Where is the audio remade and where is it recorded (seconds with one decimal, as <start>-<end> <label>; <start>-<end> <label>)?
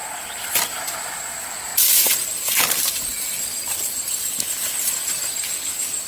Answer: 0.0-1.1 recorded; 1.1-6.1 remade